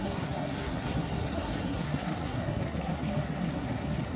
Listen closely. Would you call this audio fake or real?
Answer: fake